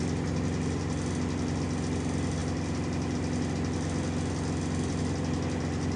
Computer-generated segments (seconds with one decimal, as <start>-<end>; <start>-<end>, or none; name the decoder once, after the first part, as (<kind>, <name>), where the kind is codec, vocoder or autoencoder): none